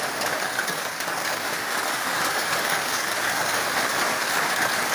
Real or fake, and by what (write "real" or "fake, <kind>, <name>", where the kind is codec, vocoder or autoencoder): fake, codec, DAC